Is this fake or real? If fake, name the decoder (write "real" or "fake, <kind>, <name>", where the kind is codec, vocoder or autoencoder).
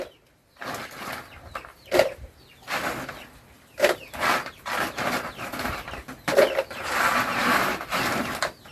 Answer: real